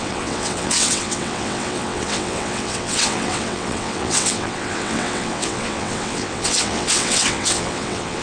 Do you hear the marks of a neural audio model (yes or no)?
yes